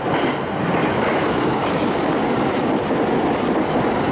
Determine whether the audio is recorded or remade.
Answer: recorded